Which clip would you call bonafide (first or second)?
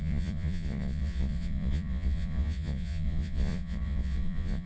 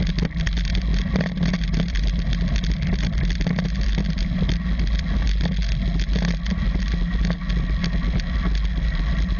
second